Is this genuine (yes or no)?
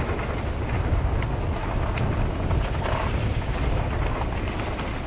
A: yes